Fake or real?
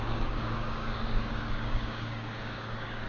fake